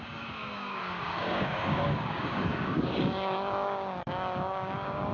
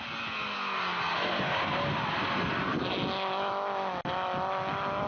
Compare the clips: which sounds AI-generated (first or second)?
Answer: first